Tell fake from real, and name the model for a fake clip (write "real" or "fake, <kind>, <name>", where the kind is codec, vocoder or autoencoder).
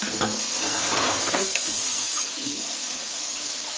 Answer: fake, codec, SNAC